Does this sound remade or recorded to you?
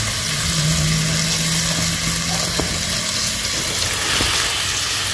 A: recorded